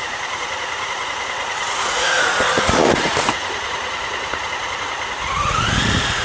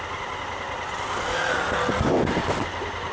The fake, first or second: first